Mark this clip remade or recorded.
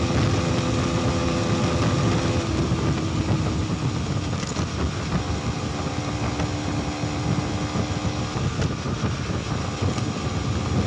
recorded